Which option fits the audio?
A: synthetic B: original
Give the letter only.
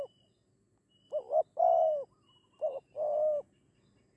B